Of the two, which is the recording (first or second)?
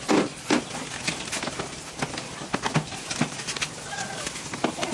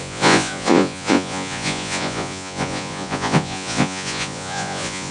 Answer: first